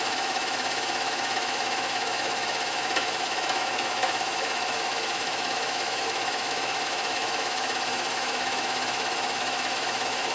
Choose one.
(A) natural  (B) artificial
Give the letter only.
B